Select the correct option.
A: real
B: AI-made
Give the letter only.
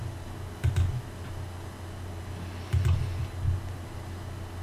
A